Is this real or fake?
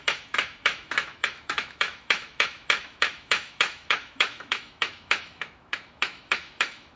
fake